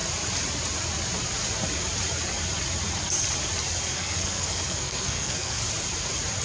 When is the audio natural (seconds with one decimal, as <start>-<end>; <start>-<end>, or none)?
0.0-3.9; 5.6-6.4

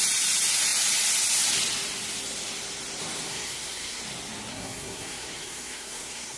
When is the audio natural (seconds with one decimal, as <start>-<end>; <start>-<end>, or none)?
0.0-3.3; 4.0-4.5

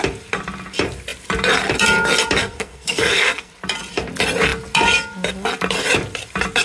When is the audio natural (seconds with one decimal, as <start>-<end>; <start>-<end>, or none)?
0.0-2.4; 3.5-6.6